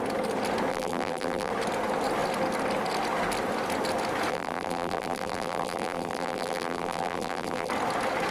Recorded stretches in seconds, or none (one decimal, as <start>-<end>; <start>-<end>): 0.0-0.7; 1.5-4.3; 7.7-8.3